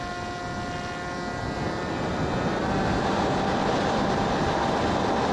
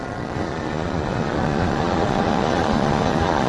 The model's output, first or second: second